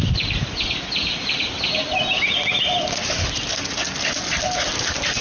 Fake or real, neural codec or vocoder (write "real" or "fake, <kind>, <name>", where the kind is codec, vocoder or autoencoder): real